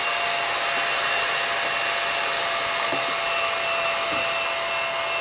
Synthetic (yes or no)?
no